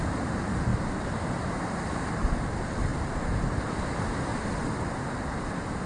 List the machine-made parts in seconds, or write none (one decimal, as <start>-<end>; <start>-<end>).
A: 0.0-4.3; 5.4-5.9